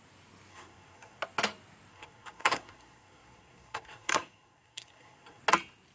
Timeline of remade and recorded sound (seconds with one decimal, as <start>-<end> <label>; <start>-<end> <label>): 0.0-0.5 recorded; 0.5-1.2 remade; 1.2-1.9 recorded; 1.9-5.4 remade; 5.4-5.9 recorded